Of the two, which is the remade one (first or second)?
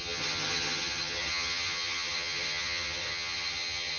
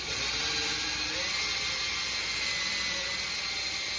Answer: first